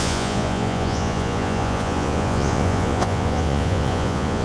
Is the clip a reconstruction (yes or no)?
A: yes